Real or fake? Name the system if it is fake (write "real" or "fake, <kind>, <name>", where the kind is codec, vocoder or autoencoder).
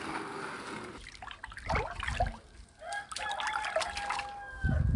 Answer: real